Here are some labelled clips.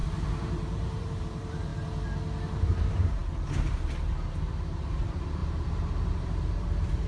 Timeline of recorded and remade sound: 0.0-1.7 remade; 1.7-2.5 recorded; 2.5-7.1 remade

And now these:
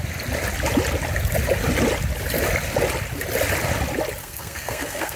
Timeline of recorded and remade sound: 0.0-4.2 recorded; 4.2-5.2 remade